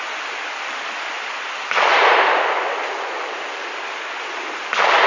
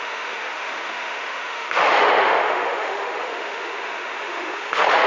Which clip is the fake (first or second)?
second